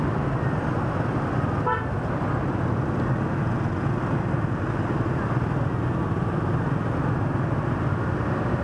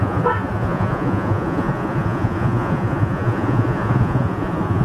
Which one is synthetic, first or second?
second